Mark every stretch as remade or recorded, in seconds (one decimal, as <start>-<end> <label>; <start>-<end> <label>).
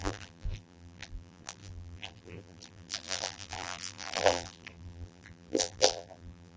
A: 0.0-6.6 remade